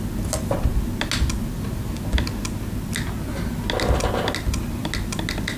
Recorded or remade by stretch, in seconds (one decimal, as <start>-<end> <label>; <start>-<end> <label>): 0.0-5.6 recorded